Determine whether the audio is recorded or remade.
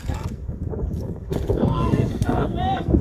remade